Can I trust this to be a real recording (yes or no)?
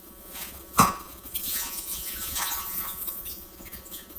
no